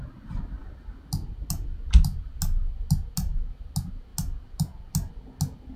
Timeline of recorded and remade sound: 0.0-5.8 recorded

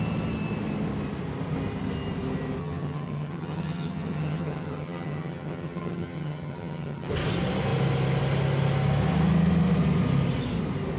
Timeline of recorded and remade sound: 0.0-2.6 recorded; 2.6-7.1 remade; 7.1-11.0 recorded

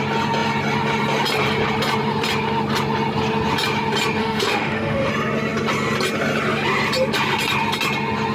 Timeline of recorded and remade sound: 0.0-4.2 recorded; 4.2-5.1 remade; 5.1-8.3 recorded

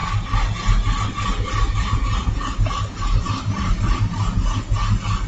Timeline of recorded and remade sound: 0.0-3.2 recorded; 3.2-4.4 remade; 4.4-5.3 recorded